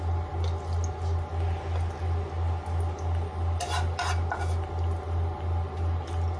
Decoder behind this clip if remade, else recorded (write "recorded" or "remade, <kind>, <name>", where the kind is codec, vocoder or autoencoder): recorded